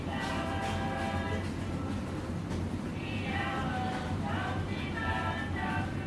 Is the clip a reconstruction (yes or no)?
no